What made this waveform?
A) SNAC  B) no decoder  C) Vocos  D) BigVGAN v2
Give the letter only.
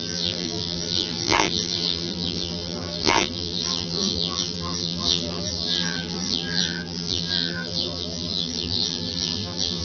D